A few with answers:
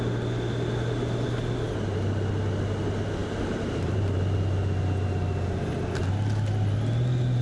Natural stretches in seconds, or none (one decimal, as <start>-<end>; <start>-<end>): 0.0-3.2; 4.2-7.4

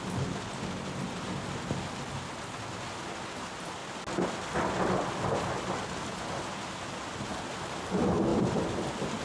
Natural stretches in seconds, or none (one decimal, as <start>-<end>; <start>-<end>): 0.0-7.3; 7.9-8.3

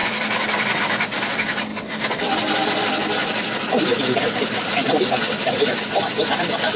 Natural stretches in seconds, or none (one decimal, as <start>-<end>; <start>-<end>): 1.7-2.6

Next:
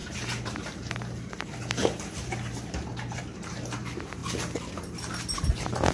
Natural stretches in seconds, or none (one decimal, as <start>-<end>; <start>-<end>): 4.2-5.4

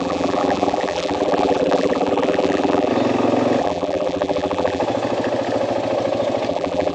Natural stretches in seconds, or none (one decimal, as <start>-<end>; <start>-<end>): 2.9-3.6; 4.8-6.5